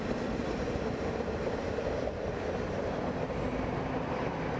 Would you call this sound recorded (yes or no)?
yes